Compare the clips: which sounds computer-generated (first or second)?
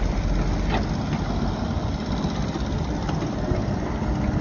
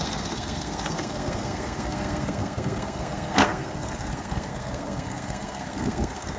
second